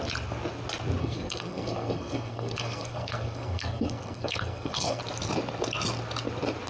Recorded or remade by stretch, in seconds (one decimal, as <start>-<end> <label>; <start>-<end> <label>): 0.0-1.0 recorded; 1.0-5.0 remade; 5.0-6.7 recorded